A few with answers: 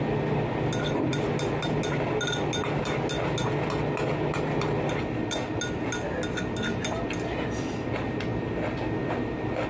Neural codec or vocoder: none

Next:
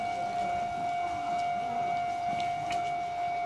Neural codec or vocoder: none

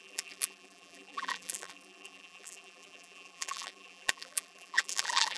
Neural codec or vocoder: vocoder, BigVGAN v2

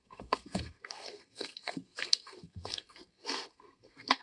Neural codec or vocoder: codec, SNAC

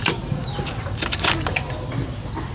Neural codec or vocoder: none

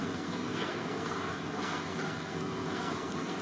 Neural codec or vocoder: codec, SNAC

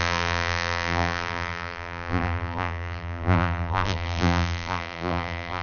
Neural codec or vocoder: vocoder, BigVGAN v2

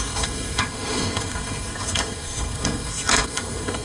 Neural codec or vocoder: codec, SNAC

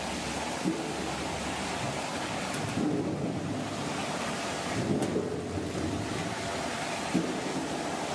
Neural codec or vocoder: none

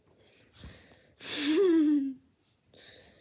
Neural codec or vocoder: none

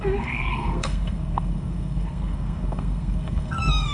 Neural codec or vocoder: codec, SNAC